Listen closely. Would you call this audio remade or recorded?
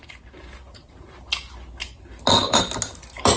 recorded